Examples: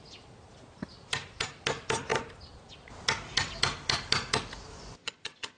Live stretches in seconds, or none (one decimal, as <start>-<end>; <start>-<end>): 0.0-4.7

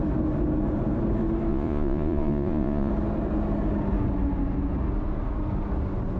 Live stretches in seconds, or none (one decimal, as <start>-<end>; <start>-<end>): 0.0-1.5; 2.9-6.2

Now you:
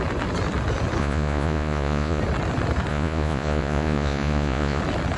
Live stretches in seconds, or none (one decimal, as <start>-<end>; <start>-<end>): 0.0-1.0; 2.2-2.9; 4.8-5.2